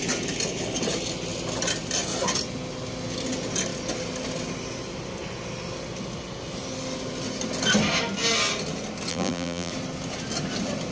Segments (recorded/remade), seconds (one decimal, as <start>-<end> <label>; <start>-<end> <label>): 0.0-9.1 recorded; 9.1-9.7 remade; 9.7-10.9 recorded